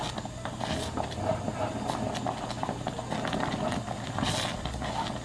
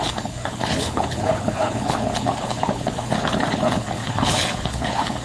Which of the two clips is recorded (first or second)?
first